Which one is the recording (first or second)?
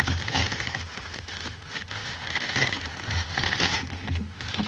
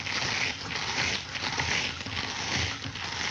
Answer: second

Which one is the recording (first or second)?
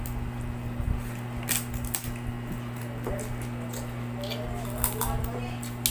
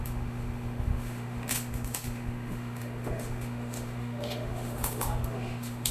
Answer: first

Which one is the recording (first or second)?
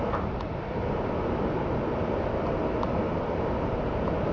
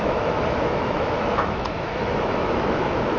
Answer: first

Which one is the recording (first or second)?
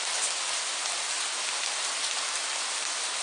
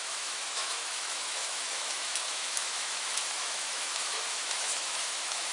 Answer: first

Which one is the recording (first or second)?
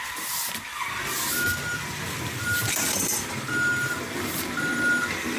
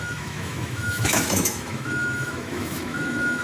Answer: first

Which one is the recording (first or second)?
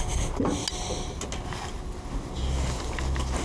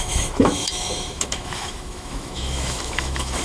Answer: first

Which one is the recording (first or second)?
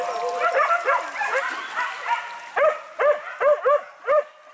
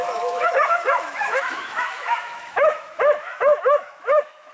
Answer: first